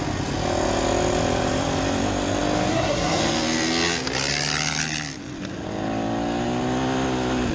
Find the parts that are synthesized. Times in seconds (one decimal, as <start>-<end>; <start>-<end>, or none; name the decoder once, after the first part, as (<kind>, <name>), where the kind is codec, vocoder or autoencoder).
2.7-3.2 (codec, SNAC)